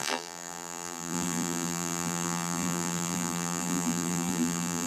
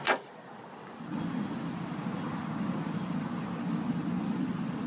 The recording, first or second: second